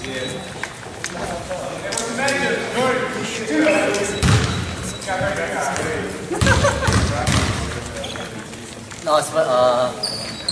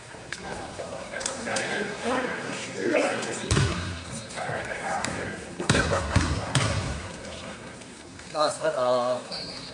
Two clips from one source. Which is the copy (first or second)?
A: second